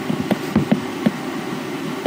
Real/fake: real